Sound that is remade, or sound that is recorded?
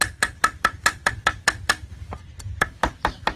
recorded